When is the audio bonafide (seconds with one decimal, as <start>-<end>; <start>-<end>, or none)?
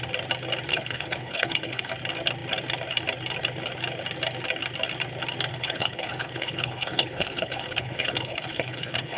0.0-0.7; 1.9-5.5